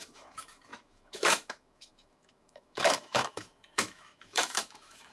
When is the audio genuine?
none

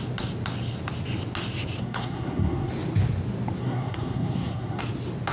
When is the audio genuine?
0.0-1.8; 2.7-3.6; 4.8-5.3

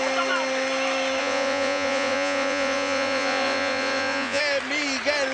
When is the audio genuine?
0.0-1.2; 4.4-5.3

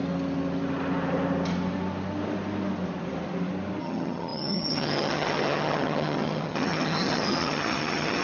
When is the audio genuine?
0.0-3.8

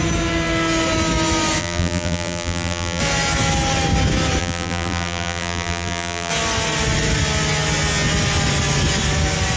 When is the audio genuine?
0.0-1.6; 3.0-4.4; 6.3-9.6

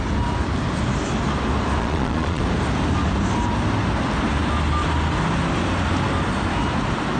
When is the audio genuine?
0.0-1.8; 2.4-7.2